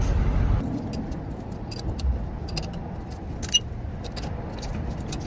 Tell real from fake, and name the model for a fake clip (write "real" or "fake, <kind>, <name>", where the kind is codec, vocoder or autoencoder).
real